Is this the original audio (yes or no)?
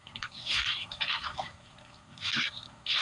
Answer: no